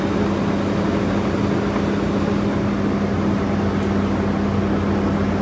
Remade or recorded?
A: recorded